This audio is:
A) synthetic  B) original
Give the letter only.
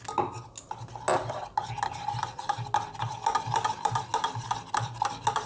B